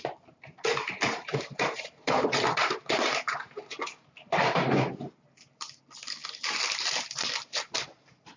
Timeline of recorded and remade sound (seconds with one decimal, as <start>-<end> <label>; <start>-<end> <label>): 0.0-1.3 recorded; 1.3-5.0 remade; 5.0-8.4 recorded